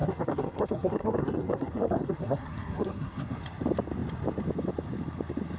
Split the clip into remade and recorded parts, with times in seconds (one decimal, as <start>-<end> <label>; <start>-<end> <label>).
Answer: 0.0-3.4 remade; 3.4-5.6 recorded